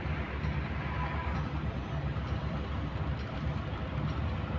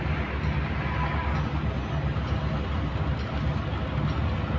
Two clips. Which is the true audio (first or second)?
second